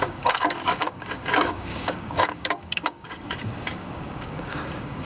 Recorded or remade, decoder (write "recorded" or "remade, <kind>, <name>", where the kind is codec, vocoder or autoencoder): remade, codec, DAC